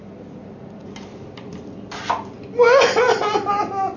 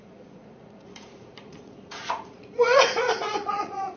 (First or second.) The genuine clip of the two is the first